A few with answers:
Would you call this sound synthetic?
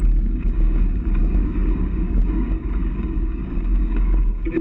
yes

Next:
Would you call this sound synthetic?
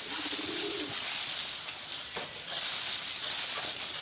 no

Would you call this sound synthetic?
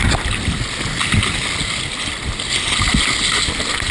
no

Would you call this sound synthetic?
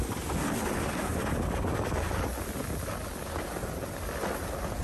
no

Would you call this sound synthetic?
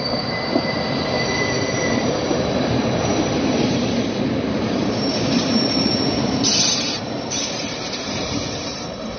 yes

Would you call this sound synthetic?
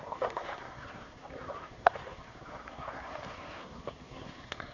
yes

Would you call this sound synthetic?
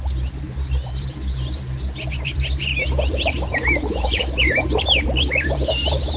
yes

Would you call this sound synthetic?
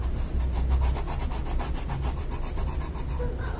no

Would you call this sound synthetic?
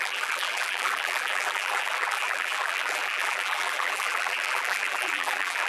yes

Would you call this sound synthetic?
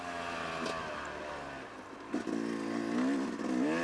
no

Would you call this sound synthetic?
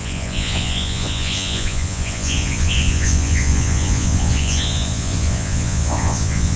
yes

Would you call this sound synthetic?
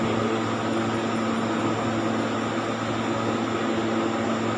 no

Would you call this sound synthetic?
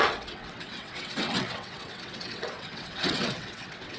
yes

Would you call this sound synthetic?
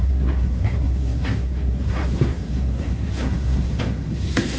yes